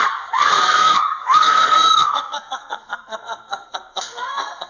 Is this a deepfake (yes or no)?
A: yes